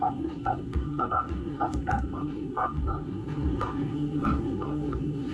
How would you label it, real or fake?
fake